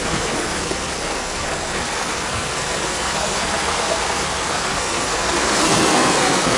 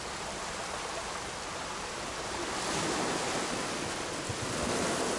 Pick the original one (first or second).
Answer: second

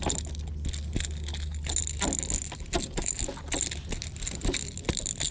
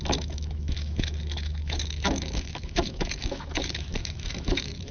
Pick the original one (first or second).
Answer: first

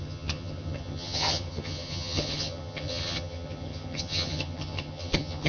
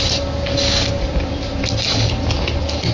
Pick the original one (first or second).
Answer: second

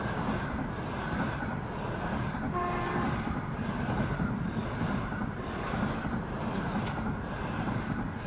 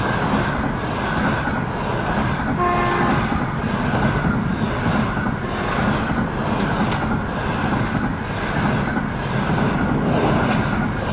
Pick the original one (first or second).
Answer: second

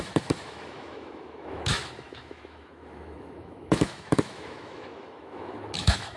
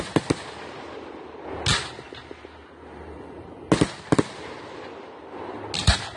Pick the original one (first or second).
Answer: second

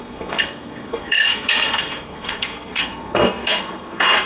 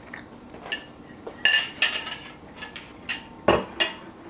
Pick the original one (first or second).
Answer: second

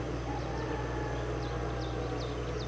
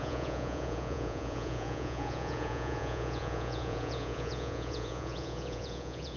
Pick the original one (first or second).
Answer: first